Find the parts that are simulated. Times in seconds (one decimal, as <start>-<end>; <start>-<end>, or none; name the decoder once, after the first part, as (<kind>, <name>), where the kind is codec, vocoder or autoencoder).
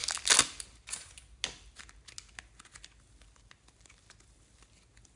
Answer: none